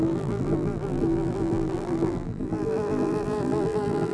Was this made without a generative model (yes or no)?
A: no